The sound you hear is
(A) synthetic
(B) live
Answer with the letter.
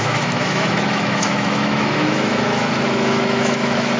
A